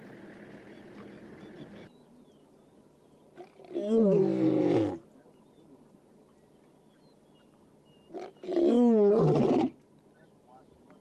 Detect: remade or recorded recorded